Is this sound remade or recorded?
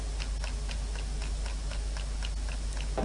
recorded